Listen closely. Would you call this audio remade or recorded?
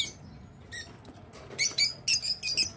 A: recorded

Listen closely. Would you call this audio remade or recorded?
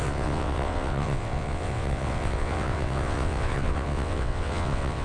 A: remade